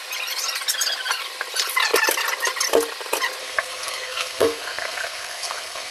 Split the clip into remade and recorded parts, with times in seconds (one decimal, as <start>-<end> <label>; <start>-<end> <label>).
0.0-3.4 recorded; 3.4-5.9 remade